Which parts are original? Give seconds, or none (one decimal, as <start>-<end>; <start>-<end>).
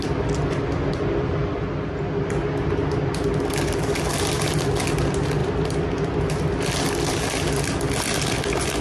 0.0-5.4; 6.2-8.8